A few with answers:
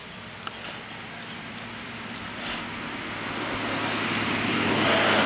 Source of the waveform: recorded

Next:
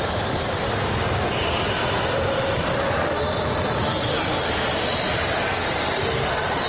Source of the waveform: recorded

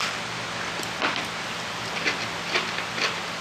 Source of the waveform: recorded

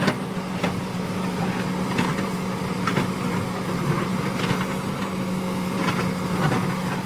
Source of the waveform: recorded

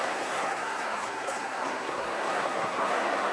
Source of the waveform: remade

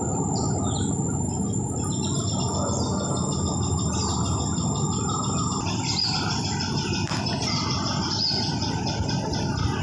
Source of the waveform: recorded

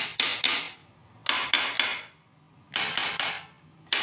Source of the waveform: recorded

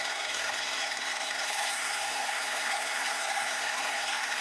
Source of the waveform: remade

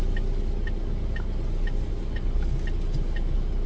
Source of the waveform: recorded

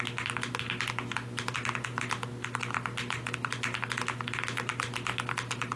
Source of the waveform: recorded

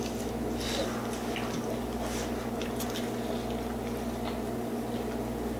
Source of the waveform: recorded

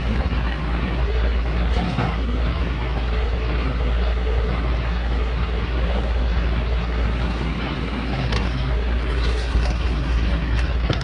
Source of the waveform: remade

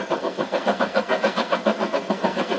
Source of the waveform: remade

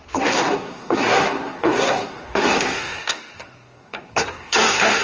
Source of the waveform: remade